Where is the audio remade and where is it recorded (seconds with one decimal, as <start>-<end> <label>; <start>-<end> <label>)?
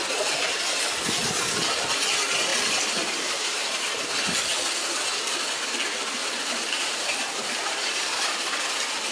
0.0-2.5 recorded; 2.5-4.1 remade; 4.1-6.2 recorded; 6.2-8.6 remade; 8.6-9.1 recorded